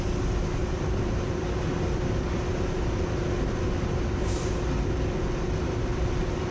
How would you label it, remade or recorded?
recorded